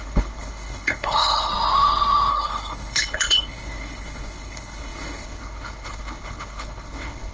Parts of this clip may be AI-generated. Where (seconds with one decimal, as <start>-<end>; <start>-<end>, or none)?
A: 0.0-1.5; 2.3-7.3